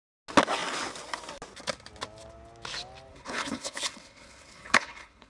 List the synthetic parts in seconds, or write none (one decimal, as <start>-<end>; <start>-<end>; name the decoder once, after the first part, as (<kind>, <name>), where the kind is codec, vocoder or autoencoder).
3.1-5.3 (codec, HILCodec)